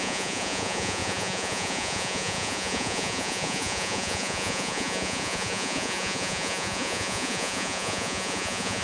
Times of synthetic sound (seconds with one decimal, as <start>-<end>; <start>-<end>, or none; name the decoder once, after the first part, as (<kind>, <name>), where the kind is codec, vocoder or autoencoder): 0.0-8.8 (vocoder, Vocos)